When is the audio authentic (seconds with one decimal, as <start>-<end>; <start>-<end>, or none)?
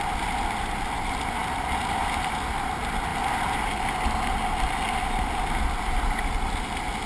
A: 0.0-7.1